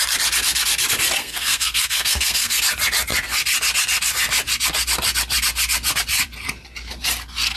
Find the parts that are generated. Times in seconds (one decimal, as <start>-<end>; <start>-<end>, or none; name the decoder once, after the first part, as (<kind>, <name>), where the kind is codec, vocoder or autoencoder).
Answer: 1.2-2.6 (codec, SNAC)